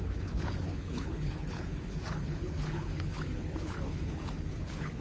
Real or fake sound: fake